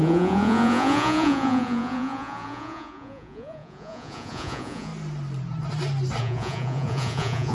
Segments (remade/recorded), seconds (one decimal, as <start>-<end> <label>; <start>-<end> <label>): 0.0-4.9 remade; 4.9-6.2 recorded; 6.2-7.5 remade